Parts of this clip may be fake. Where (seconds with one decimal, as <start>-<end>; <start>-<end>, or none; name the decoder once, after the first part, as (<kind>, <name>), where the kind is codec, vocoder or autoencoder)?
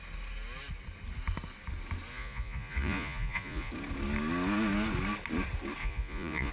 2.1-3.7 (vocoder, Vocos); 5.8-6.5